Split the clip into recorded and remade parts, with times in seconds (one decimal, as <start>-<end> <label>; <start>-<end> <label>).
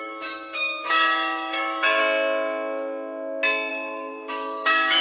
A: 0.0-2.0 remade; 2.0-3.7 recorded; 3.7-5.0 remade